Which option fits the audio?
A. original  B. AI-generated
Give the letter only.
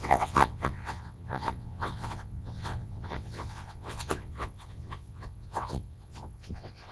B